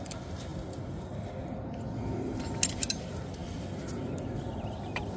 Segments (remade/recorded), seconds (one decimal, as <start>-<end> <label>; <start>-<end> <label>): 0.0-5.2 recorded